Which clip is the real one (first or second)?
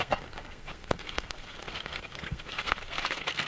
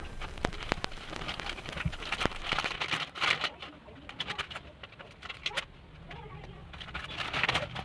second